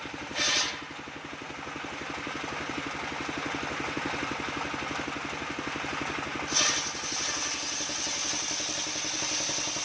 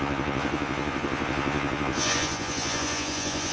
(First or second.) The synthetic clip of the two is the second